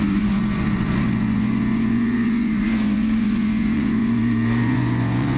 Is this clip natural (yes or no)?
no